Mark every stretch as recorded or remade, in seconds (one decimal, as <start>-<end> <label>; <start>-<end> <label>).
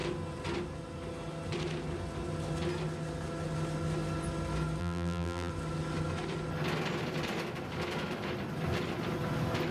0.0-4.8 recorded; 4.8-5.5 remade; 5.5-9.7 recorded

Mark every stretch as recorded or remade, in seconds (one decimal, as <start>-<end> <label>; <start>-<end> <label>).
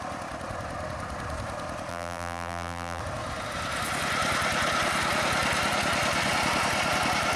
0.0-1.9 recorded; 1.9-3.0 remade; 3.0-7.4 recorded